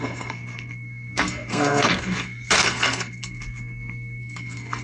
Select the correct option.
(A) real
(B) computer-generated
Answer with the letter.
B